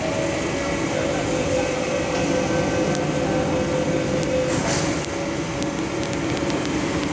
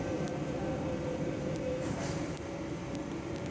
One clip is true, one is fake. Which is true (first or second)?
first